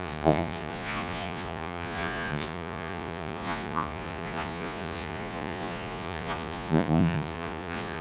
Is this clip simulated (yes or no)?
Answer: yes